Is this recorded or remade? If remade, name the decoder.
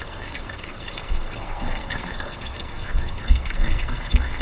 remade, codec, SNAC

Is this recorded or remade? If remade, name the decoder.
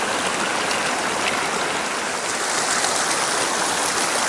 recorded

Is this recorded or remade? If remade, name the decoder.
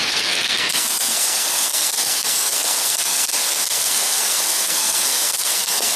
remade, codec, SNAC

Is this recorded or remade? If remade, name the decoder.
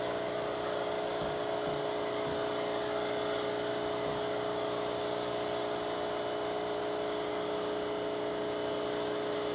recorded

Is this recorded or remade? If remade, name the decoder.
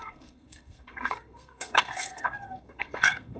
remade, codec, SNAC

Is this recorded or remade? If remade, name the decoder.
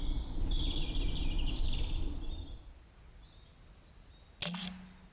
recorded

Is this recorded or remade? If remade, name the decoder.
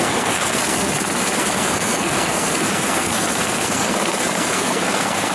remade, codec, SNAC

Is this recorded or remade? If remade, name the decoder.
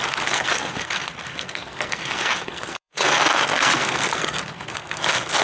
remade, codec, SNAC